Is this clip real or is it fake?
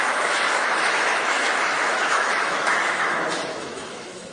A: fake